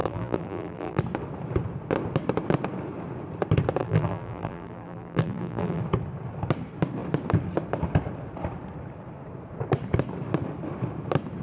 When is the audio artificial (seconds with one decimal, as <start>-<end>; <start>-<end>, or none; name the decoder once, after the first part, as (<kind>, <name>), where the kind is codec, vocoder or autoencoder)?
0.0-1.0 (vocoder, BigVGAN v2); 3.8-5.8